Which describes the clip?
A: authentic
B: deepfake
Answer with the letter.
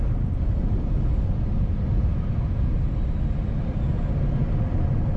A